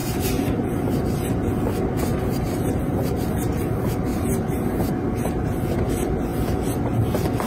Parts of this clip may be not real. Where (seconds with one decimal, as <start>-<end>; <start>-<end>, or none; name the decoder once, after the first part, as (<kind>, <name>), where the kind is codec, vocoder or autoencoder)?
0.0-1.5 (vocoder, BigVGAN v2); 2.1-3.2; 4.1-4.9